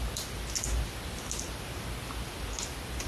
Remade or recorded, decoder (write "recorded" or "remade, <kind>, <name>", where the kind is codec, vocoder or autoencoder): recorded